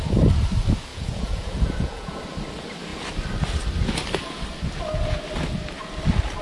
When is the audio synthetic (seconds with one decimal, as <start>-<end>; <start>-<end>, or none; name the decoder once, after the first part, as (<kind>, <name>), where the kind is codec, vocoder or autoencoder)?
0.9-2.2 (vocoder, Vocos)